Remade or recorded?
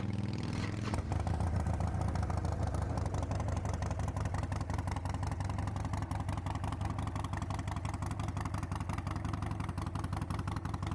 recorded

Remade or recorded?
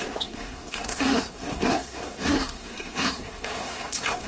remade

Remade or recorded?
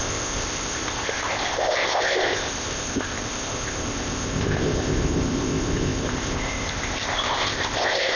remade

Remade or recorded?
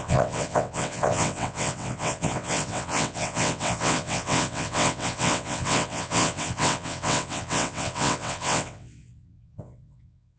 remade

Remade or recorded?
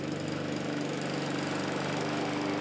recorded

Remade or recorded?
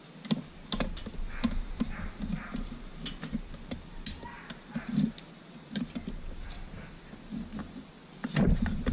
recorded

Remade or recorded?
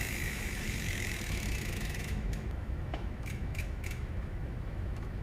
remade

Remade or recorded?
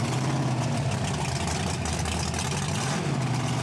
recorded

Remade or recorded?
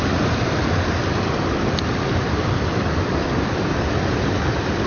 recorded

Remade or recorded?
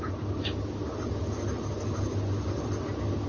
recorded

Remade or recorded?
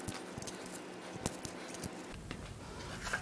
recorded